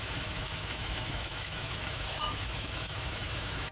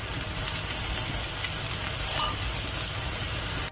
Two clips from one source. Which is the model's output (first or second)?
first